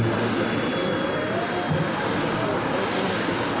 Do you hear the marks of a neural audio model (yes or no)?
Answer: no